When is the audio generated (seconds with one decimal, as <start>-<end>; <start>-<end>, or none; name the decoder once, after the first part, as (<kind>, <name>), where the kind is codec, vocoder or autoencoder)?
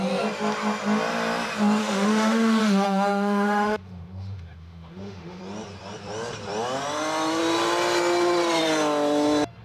1.8-5.4 (autoencoder, DAC-VAE)